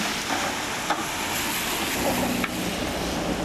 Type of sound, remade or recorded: recorded